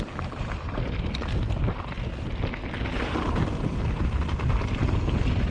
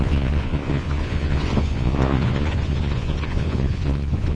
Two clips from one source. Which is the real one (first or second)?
first